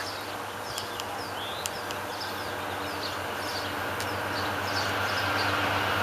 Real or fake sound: real